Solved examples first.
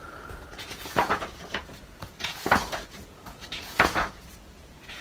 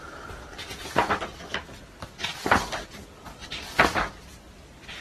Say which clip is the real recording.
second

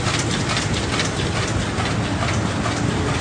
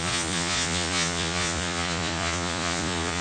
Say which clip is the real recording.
first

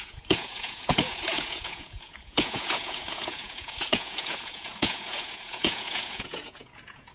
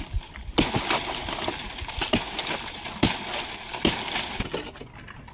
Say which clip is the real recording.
second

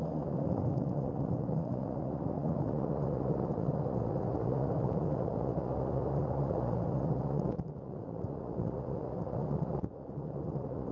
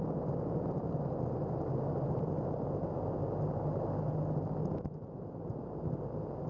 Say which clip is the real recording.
second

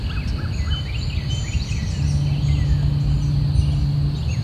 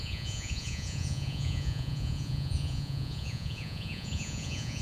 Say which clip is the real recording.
first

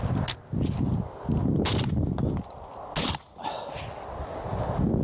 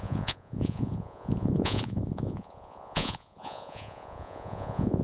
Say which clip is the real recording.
first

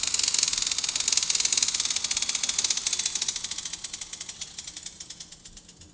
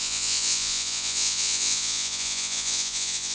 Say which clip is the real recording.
first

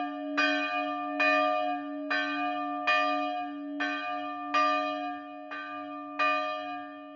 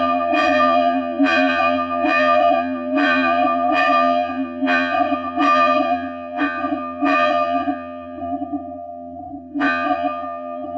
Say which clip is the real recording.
first